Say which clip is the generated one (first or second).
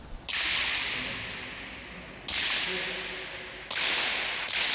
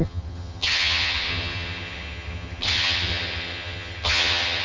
second